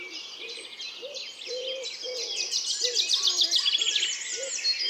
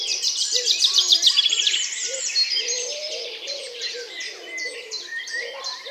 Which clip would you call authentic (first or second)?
first